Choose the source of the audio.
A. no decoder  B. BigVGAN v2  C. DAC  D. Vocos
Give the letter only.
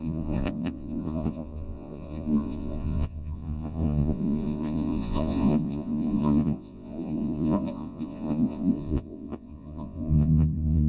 D